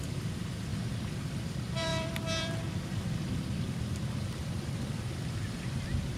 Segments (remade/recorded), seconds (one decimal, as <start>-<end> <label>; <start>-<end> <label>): 0.0-0.7 remade; 0.7-1.5 recorded; 1.5-6.2 remade